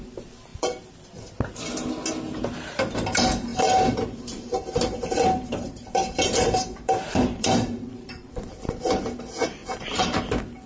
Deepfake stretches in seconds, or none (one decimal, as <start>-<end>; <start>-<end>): 0.5-1.0; 3.5-8.5; 9.6-10.2